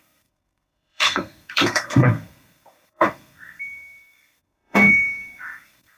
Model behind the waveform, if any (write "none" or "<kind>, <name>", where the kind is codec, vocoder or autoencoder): codec, SNAC